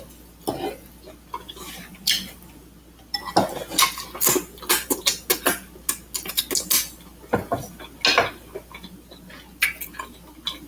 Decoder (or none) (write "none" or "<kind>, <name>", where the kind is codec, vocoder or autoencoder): none